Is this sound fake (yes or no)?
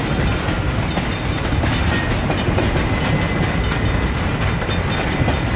no